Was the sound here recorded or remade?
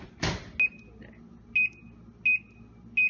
recorded